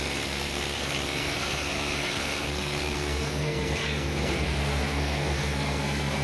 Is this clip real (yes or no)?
no